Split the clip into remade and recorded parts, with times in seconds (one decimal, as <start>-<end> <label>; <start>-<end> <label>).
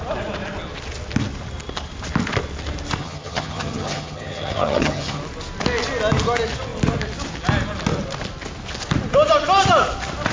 0.0-3.0 recorded; 3.0-5.2 remade; 5.2-10.3 recorded